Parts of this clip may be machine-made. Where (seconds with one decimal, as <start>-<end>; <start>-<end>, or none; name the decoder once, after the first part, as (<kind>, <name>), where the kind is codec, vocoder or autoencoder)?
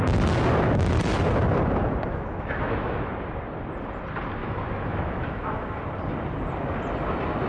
2.1-3.1 (autoencoder, DAC-VAE); 4.4-5.8